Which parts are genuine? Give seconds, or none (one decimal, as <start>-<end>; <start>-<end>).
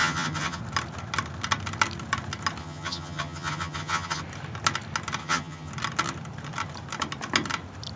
0.6-2.6; 4.2-5.2; 5.7-8.0